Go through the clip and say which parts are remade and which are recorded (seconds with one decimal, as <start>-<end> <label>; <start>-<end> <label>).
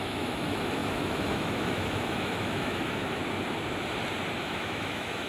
0.0-3.2 remade; 3.2-4.4 recorded; 4.4-5.3 remade